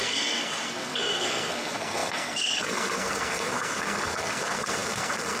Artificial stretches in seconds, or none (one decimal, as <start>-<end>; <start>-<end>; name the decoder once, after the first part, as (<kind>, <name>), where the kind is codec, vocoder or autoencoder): 0.0-5.4 (codec, SNAC)